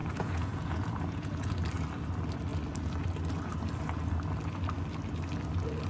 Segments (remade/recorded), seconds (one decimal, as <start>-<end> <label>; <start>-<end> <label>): 0.0-1.5 remade; 1.5-5.9 recorded